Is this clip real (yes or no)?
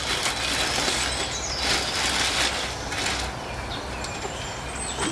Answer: yes